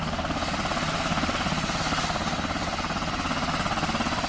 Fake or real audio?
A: real